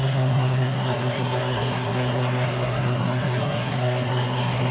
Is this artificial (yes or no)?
yes